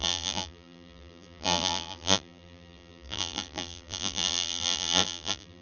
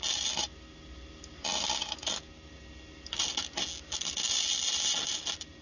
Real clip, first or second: second